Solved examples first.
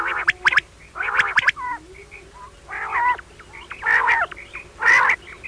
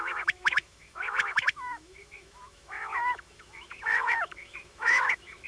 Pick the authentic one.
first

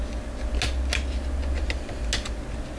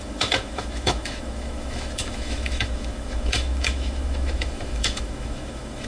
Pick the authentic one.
first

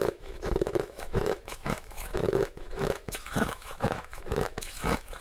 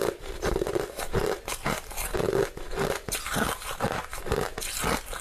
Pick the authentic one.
second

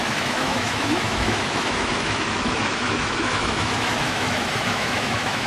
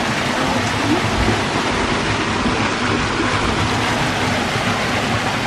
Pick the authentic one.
second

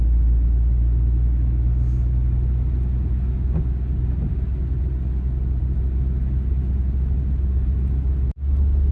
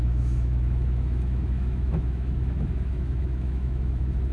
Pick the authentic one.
first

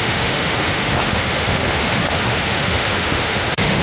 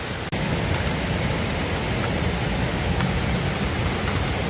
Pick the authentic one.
second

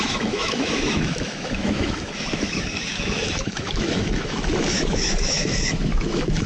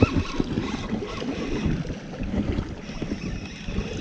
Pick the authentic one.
second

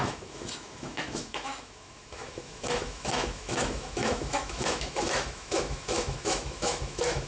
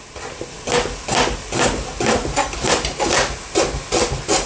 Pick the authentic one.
second